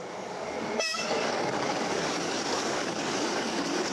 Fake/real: fake